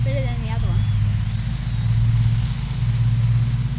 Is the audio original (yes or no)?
yes